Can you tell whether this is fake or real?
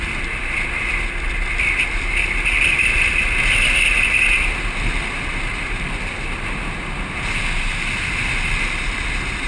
real